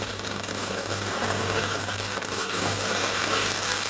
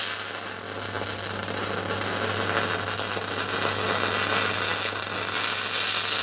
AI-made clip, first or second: first